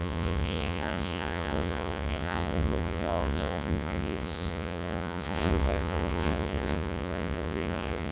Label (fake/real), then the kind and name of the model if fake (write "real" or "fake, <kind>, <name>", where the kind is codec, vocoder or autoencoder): fake, vocoder, Vocos